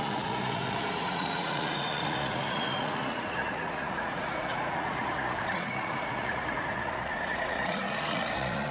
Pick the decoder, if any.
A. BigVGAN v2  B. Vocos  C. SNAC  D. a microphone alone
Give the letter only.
B